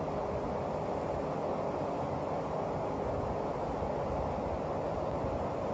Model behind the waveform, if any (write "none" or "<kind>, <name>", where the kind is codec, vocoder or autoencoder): none